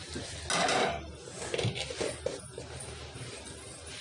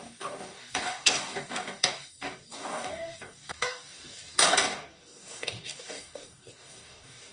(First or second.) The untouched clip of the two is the first